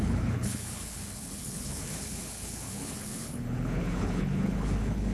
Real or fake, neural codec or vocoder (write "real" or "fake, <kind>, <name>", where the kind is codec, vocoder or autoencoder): fake, codec, HILCodec